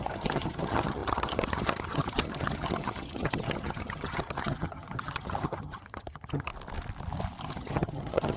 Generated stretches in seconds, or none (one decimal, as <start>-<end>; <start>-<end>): 0.0-6.5; 7.4-8.4